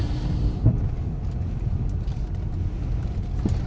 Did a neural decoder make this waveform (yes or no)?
no